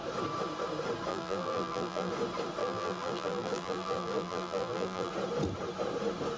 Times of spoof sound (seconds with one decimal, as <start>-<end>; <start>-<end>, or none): 1.1-2.1; 2.6-5.1